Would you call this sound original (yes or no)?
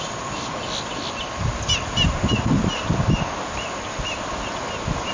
yes